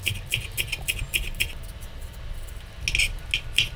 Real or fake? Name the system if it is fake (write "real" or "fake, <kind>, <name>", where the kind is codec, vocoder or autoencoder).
real